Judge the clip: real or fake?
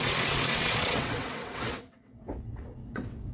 fake